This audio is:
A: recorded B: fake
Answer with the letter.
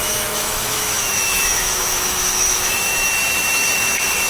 B